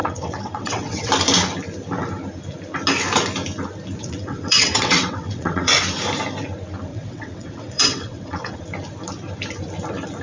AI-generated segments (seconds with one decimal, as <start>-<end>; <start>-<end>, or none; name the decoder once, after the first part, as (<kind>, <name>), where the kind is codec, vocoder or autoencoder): 0.0-1.1 (vocoder, WaveNeXt); 4.0-5.8; 6.9-8.6

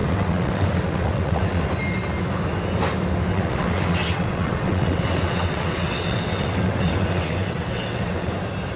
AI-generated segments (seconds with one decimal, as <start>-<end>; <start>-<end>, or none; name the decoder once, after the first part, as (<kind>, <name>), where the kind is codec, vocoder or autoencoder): 0.0-1.6 (vocoder, WaveNeXt); 3.3-8.3

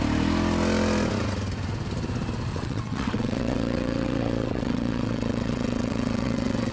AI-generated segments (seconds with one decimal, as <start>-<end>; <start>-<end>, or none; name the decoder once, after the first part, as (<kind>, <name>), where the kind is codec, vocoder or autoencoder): 2.5-6.7 (vocoder, WaveNeXt)

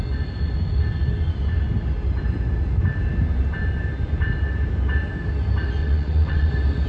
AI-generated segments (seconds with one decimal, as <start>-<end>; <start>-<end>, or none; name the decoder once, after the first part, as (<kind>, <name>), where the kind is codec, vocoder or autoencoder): 5.8-6.5 (vocoder, WaveNeXt)

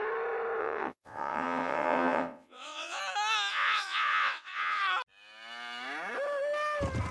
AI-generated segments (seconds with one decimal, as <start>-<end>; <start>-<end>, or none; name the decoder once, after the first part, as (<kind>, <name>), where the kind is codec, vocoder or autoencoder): 0.6-3.0 (vocoder, WaveNeXt); 3.5-4.8

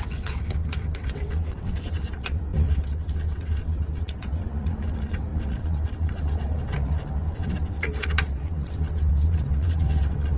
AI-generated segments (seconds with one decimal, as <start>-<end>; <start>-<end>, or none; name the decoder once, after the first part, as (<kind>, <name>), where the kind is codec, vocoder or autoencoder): 0.0-10.4 (vocoder, WaveNeXt)